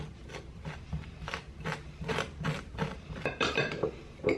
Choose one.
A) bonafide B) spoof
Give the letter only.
B